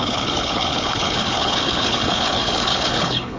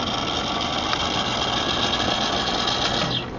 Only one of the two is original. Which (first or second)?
second